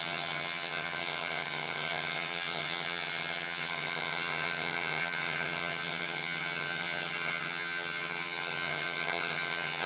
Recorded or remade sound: remade